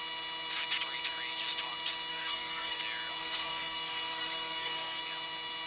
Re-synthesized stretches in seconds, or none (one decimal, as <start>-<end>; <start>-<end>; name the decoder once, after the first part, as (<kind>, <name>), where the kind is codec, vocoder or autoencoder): 2.1-2.8 (codec, SNAC); 3.2-5.0